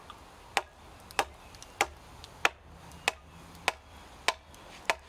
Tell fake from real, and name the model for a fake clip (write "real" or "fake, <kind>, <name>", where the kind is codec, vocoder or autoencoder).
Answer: real